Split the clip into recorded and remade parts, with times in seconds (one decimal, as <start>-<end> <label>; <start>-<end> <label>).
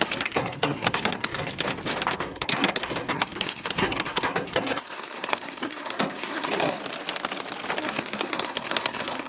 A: 0.0-1.5 remade; 1.5-2.2 recorded; 2.2-6.8 remade; 6.8-7.8 recorded; 7.8-9.3 remade